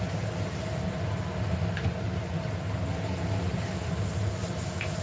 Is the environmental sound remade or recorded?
recorded